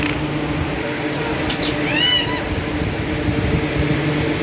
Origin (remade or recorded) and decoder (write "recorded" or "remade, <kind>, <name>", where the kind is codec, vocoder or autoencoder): recorded